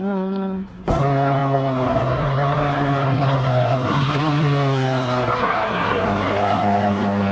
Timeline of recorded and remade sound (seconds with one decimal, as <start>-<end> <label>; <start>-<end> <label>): 0.0-7.3 remade